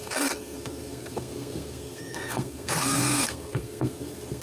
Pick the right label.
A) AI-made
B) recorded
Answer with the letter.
A